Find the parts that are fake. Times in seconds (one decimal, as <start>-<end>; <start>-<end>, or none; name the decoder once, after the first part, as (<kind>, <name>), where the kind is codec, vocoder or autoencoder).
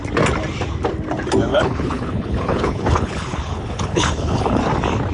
1.5-4.6 (codec, HILCodec)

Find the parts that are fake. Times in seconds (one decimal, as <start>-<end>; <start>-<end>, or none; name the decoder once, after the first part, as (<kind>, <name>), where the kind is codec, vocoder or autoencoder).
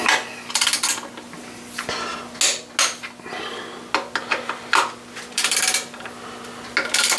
none